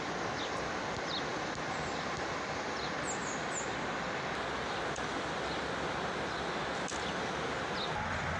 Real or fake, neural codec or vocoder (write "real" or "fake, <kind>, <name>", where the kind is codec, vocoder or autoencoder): real